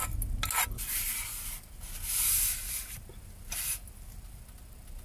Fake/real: real